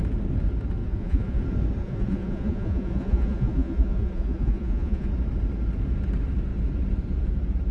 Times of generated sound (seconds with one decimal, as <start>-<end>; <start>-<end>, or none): 0.8-1.4; 1.8-5.1